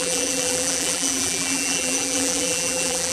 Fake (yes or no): yes